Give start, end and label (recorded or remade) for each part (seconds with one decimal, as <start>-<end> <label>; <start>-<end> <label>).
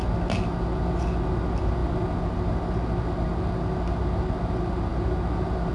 0.0-5.7 recorded